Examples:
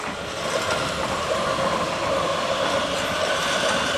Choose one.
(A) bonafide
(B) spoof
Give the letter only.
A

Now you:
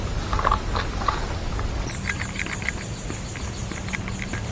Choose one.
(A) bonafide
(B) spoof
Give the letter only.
A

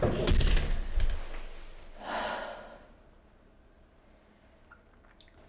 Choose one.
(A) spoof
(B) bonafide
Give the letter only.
B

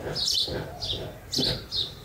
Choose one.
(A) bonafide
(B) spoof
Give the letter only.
A